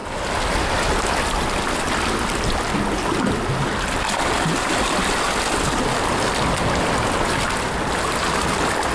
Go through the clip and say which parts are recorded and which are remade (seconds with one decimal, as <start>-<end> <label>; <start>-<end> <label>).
0.0-8.9 recorded